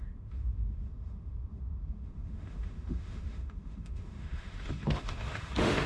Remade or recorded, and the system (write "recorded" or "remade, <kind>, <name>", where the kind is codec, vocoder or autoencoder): remade, autoencoder, DAC-VAE